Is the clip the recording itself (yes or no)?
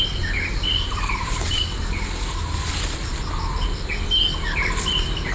yes